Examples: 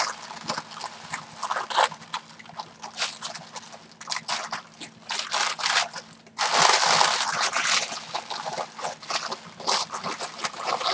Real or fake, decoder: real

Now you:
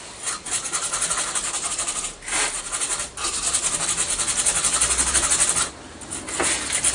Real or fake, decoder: real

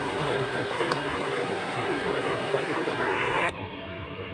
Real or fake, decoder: fake, codec, SNAC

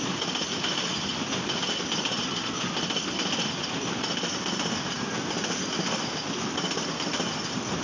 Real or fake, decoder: real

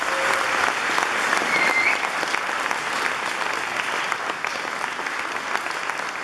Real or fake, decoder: real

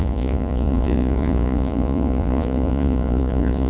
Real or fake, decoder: fake, vocoder, Vocos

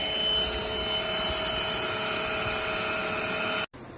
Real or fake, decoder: real